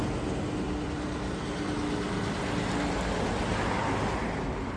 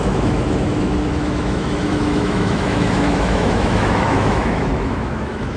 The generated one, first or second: second